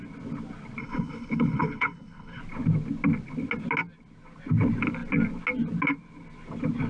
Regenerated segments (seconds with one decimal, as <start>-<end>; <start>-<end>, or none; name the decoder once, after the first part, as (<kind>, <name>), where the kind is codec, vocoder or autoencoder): 0.8-2.4 (codec, HILCodec)